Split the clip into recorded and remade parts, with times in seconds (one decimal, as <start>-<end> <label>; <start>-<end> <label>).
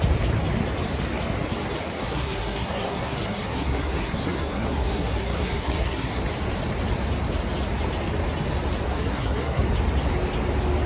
0.0-2.0 recorded; 2.0-6.2 remade; 6.2-8.9 recorded; 8.9-9.6 remade; 9.6-10.9 recorded